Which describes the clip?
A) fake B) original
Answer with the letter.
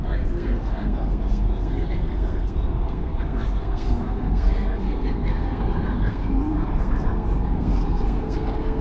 A